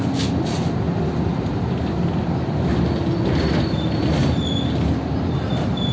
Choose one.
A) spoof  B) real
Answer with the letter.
B